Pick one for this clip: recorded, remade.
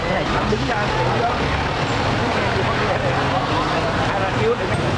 recorded